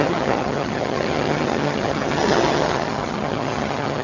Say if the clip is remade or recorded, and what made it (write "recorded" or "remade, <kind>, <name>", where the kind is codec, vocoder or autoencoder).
remade, vocoder, HiFi-GAN